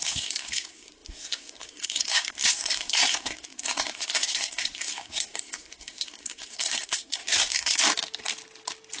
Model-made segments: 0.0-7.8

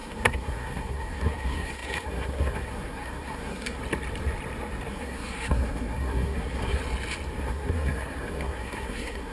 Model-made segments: 0.0-3.8; 4.9-6.8; 7.4-9.3

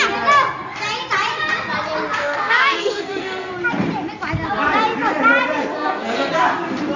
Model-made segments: 2.2-3.5; 5.7-6.3

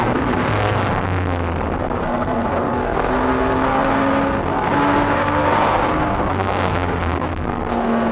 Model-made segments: 0.0-1.4; 2.0-8.1